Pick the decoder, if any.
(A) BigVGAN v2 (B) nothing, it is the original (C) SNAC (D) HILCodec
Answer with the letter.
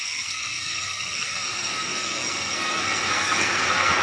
C